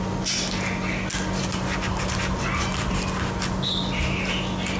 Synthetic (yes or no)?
no